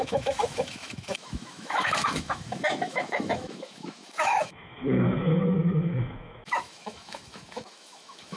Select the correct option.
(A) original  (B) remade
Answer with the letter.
B